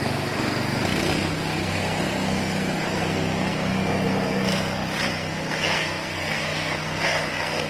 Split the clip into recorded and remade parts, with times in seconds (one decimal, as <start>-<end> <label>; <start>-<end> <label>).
0.0-7.7 remade

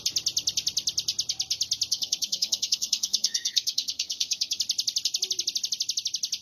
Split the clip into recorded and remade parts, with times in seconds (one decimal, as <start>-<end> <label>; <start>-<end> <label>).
0.0-1.9 recorded; 1.9-4.6 remade; 4.6-6.4 recorded

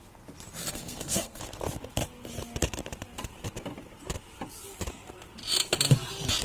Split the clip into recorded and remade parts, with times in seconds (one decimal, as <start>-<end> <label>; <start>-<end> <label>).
0.0-0.6 recorded; 0.6-1.4 remade; 1.4-6.4 recorded

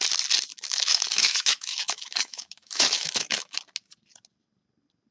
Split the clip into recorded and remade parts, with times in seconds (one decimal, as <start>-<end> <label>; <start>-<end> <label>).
0.0-0.5 recorded; 0.5-3.6 remade; 3.6-5.1 recorded

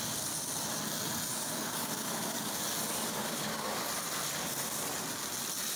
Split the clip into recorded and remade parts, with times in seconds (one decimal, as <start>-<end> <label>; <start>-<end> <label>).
0.0-1.3 recorded; 1.3-2.6 remade; 2.6-3.1 recorded; 3.1-3.9 remade; 3.9-5.8 recorded